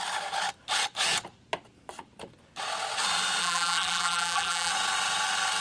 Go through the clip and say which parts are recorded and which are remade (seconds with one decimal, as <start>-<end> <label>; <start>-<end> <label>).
0.0-3.4 recorded; 3.4-4.7 remade; 4.7-5.6 recorded